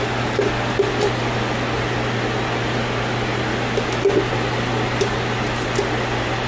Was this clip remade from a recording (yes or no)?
no